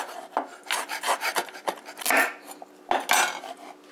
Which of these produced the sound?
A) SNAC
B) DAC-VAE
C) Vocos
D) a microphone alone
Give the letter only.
D